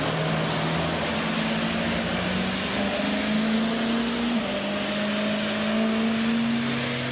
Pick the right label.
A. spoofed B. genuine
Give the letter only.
B